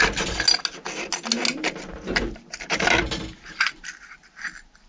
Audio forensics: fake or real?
real